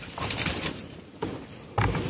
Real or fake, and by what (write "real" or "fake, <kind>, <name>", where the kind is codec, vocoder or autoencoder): real